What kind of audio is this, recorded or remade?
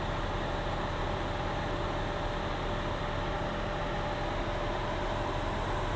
recorded